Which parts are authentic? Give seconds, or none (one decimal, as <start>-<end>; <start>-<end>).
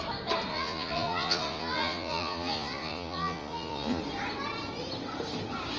0.0-0.5; 4.0-5.8